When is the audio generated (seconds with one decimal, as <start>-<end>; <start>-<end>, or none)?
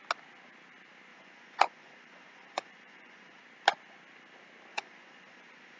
1.1-3.4; 4.7-5.8